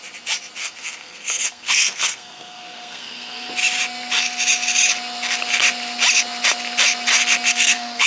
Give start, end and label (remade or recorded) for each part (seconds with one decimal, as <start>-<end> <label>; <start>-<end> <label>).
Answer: 0.0-0.6 recorded; 0.6-3.5 remade; 3.5-7.5 recorded; 7.5-8.1 remade